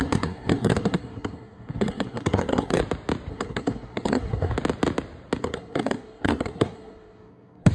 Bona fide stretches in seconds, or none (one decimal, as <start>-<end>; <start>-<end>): 2.8-3.3; 4.5-5.4